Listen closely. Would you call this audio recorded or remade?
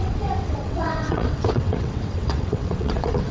remade